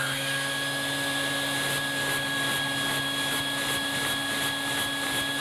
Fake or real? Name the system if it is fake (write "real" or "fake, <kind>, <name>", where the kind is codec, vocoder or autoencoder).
real